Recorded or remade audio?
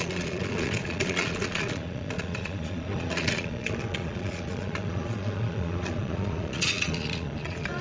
remade